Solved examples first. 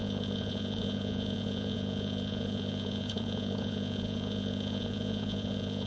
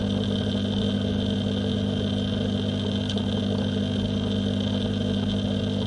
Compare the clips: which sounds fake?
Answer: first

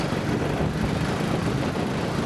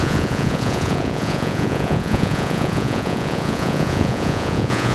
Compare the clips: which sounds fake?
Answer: second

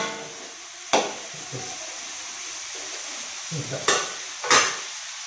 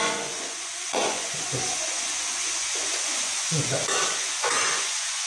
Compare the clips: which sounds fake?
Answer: second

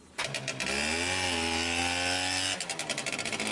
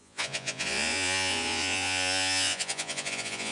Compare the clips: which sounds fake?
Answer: second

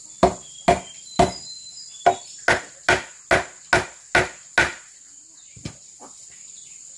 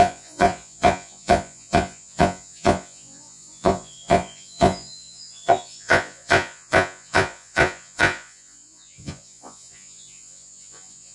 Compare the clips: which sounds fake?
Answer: second